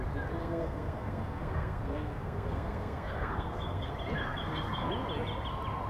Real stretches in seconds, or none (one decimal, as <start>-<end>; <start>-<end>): 0.0-0.4; 3.9-4.3; 4.9-5.9